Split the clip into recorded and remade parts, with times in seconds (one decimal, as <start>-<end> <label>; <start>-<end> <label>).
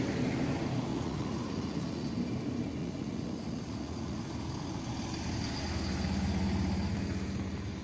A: 0.0-0.9 recorded; 0.9-2.1 remade; 2.1-2.8 recorded; 2.8-4.2 remade; 4.2-7.8 recorded